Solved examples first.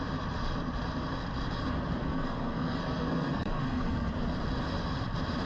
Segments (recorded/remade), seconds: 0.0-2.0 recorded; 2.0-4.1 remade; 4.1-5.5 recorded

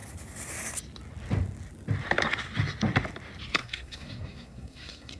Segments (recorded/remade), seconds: 0.0-3.6 recorded; 3.6-5.2 remade

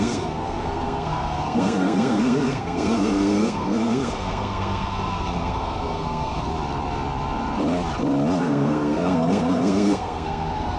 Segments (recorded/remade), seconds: 0.0-6.5 remade; 6.5-8.4 recorded; 8.4-10.8 remade